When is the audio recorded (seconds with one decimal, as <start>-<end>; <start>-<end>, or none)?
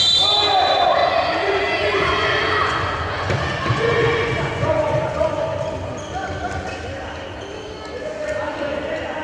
0.0-1.0; 5.4-9.2